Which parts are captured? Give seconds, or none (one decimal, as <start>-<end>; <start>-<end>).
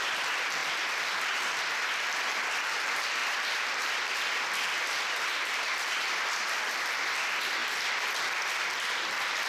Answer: none